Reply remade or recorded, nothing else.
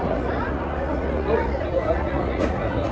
remade